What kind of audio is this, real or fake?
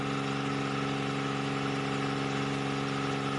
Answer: real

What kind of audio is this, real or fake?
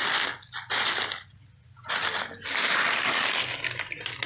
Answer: real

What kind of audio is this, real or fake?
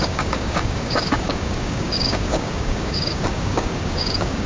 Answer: fake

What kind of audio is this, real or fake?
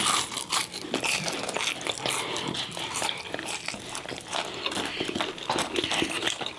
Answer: real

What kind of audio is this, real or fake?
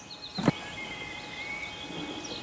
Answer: real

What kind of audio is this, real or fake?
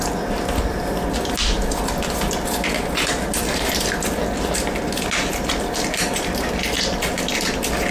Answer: real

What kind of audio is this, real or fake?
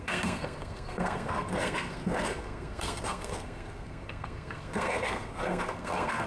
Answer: fake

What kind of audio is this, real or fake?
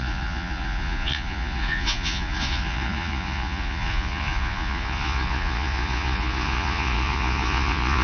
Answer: fake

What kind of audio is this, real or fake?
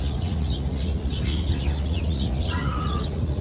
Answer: fake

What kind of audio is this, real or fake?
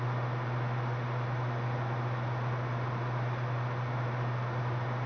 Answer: real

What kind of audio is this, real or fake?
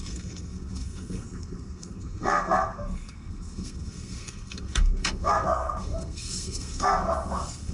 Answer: fake